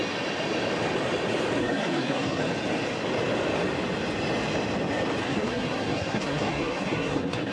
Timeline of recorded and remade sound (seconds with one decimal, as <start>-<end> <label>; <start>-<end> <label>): 0.0-1.6 recorded; 1.6-2.4 remade; 2.4-5.2 recorded; 5.2-7.5 remade